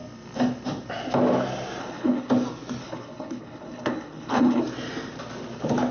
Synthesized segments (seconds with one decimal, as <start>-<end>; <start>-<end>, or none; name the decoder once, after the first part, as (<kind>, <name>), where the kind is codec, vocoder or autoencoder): 1.8-2.3 (codec, HILCodec); 2.8-4.6